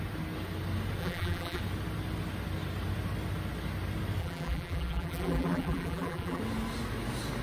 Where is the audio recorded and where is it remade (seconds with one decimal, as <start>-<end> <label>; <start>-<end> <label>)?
0.0-1.0 recorded; 1.0-1.6 remade; 1.6-4.2 recorded; 4.2-6.4 remade; 6.4-7.4 recorded